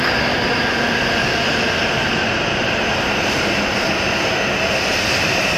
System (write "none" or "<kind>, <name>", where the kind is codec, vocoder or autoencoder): none